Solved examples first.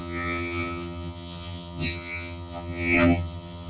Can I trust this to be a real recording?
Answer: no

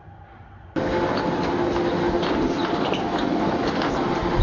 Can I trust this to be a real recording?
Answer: yes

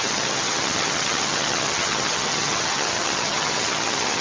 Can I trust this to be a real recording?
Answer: no